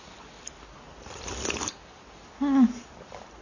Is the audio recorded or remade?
recorded